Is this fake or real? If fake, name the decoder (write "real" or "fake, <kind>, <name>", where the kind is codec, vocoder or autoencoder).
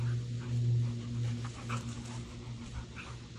real